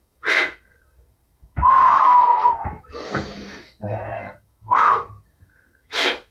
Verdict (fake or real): fake